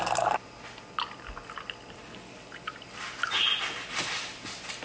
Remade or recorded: recorded